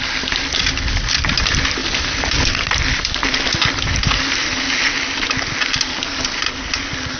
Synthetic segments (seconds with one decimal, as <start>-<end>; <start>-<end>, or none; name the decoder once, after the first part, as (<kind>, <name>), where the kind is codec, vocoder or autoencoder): none